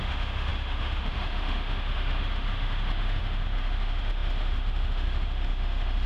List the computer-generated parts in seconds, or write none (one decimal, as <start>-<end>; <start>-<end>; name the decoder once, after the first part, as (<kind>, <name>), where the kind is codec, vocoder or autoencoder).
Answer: 0.0-6.1 (autoencoder, DAC-VAE)